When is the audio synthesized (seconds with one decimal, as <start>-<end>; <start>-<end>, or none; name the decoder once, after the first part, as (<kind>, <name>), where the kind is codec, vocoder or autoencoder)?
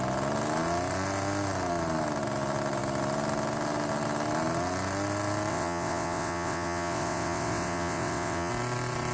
5.5-8.5 (vocoder, WaveNeXt)